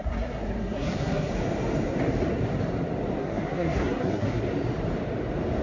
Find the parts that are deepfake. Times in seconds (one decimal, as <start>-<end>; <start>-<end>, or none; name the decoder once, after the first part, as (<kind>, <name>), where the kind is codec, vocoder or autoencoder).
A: 0.0-1.3 (codec, SNAC); 3.2-4.4